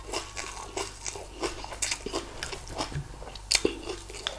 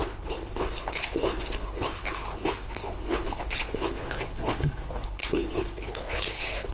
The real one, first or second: first